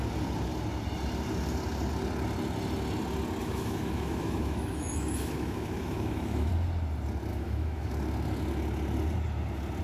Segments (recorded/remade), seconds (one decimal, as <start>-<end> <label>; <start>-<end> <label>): 0.0-3.4 recorded; 3.4-6.5 remade; 6.5-7.3 recorded; 7.3-7.9 remade; 7.9-9.8 recorded